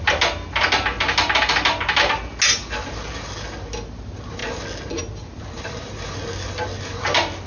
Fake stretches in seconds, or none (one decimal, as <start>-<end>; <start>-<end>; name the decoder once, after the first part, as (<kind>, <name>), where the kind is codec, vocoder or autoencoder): none